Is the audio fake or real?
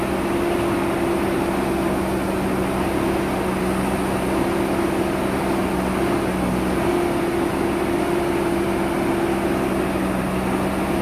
real